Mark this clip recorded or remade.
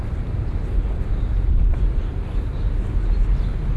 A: recorded